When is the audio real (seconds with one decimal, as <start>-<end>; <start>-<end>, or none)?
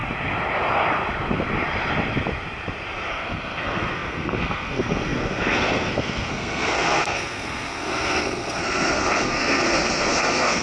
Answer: 0.0-3.1